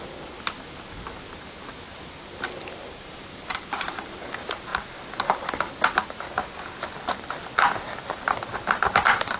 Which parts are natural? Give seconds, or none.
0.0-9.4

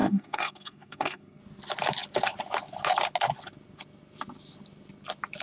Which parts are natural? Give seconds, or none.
1.4-5.4

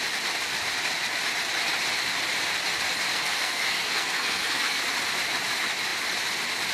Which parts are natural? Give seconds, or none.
0.0-3.1; 4.8-6.7

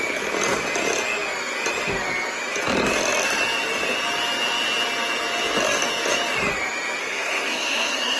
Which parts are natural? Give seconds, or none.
0.0-7.0

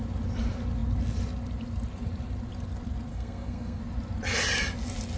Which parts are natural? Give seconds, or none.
0.0-3.1; 3.8-5.2

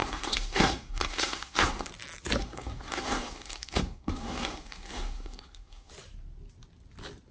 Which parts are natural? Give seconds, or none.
1.9-2.4; 5.9-7.3

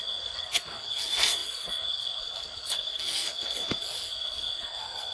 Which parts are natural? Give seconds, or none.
none

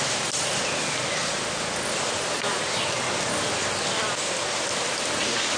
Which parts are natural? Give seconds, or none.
0.0-5.6